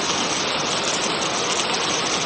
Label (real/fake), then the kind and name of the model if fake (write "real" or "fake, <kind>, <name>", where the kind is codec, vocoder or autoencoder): real